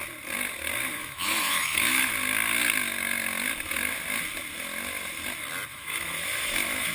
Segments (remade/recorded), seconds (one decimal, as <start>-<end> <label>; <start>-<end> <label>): 0.0-0.9 recorded; 0.9-2.1 remade; 2.1-5.7 recorded; 5.7-6.9 remade